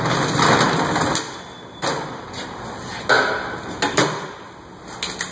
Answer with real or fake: real